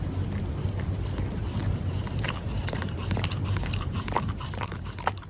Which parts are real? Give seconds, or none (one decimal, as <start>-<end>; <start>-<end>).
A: 0.0-1.6; 4.8-5.3